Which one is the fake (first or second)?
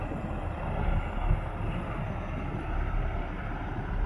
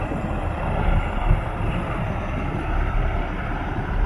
second